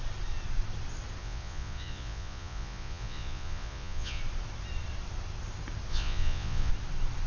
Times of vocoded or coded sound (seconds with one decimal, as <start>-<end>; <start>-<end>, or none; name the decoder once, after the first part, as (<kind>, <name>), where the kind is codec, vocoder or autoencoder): 1.2-4.2 (vocoder, Vocos); 5.9-6.7